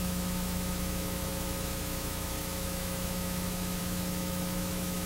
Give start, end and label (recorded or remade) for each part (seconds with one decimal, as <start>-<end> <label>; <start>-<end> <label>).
0.0-5.1 remade